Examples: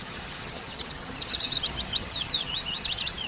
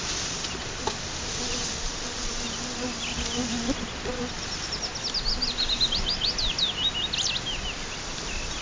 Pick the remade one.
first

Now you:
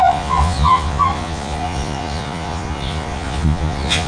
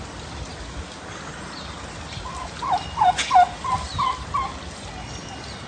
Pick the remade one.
first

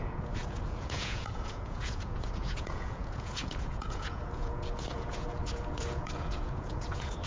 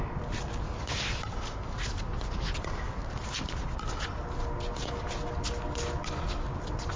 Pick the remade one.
first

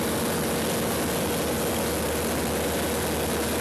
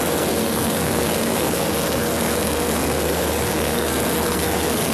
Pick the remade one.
second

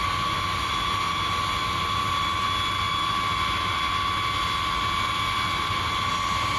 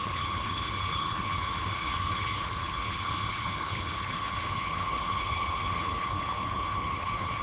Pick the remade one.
second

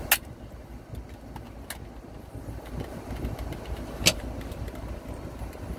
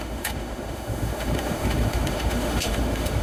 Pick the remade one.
second